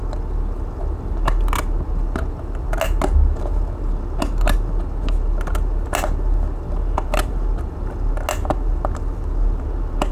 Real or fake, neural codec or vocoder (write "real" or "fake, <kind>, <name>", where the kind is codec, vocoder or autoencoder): real